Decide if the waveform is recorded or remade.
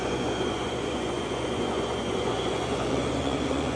remade